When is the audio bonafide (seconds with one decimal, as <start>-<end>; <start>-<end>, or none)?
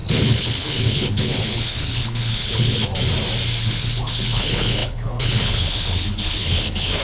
2.9-3.6